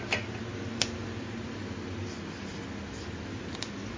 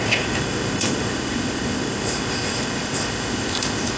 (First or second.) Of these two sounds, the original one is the first